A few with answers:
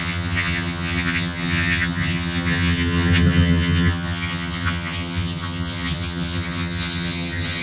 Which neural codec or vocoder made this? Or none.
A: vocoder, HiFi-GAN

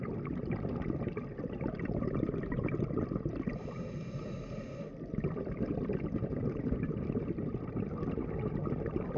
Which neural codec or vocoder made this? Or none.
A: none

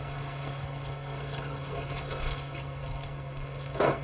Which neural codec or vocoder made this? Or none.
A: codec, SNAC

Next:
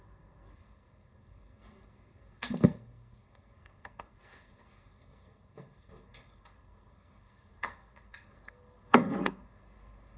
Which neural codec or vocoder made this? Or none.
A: codec, SNAC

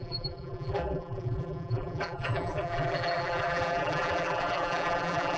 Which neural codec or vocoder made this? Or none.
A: vocoder, BigVGAN v2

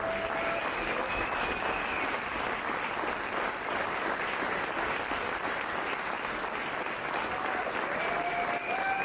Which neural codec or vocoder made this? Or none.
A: none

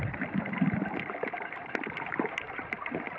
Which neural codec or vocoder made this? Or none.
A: vocoder, BigVGAN v2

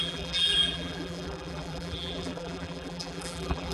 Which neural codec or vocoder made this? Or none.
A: vocoder, BigVGAN v2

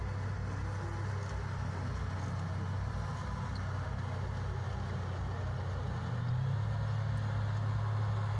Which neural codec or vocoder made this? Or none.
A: none